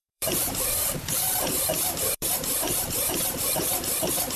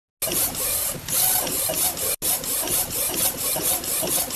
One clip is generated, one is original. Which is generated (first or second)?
first